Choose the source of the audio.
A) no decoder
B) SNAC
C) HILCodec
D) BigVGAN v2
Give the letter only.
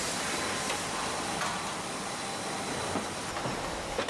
A